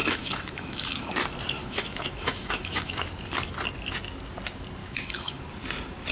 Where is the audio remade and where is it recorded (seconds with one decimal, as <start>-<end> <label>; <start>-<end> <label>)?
0.0-1.1 remade; 1.1-1.6 recorded; 1.6-3.1 remade; 3.1-4.8 recorded; 4.8-5.4 remade; 5.4-6.1 recorded